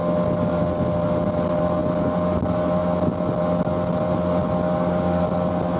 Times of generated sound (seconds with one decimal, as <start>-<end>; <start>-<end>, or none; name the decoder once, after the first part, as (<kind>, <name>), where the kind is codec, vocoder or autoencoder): none